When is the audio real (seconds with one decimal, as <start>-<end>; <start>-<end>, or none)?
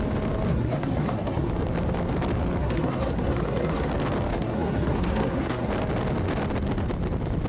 0.0-0.5; 1.5-2.6; 3.9-4.3; 5.7-7.5